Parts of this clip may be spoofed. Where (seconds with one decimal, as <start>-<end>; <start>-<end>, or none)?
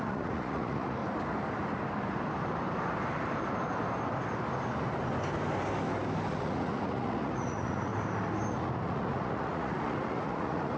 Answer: 0.0-1.0; 6.3-7.9; 8.5-10.8